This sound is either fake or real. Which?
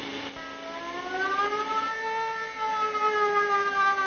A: real